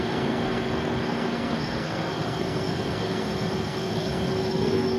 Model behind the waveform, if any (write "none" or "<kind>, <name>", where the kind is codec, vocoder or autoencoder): codec, SNAC